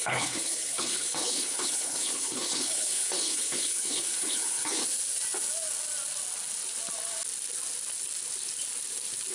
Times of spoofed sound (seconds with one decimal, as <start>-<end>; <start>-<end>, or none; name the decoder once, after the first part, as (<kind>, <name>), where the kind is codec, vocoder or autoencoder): 0.0-4.8 (codec, HILCodec)